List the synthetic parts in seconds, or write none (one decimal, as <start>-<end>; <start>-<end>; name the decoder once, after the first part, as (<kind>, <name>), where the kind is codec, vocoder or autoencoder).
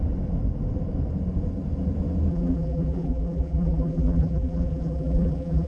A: 2.3-5.7 (vocoder, BigVGAN v2)